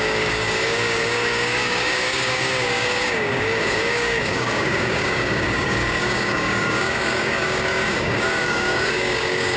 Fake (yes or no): yes